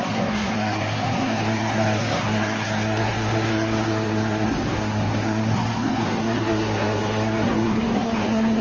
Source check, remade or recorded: remade